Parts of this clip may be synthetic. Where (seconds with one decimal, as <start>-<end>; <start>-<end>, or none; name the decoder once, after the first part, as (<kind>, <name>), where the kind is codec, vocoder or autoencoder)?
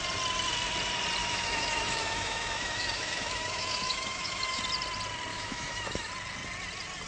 1.2-4.6 (autoencoder, DAC-VAE); 5.3-6.1